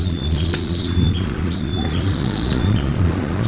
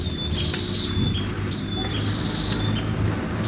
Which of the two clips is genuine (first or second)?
second